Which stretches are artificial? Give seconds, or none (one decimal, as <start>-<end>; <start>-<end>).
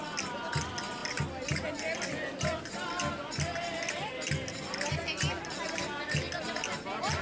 none